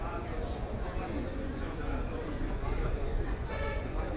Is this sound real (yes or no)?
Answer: no